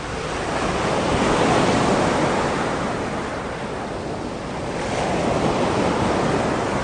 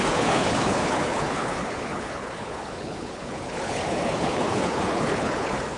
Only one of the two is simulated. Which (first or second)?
second